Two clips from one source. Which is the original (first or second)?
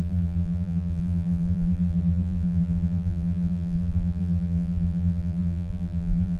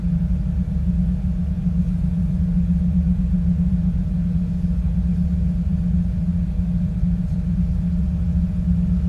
second